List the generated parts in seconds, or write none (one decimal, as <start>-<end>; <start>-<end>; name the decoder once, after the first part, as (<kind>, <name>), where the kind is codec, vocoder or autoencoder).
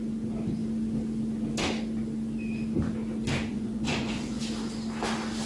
3.5-4.4 (vocoder, Vocos)